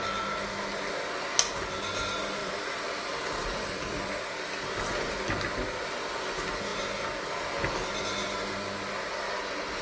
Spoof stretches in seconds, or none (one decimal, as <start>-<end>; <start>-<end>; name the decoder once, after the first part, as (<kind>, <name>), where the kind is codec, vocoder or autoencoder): 2.4-4.4 (vocoder, BigVGAN v2)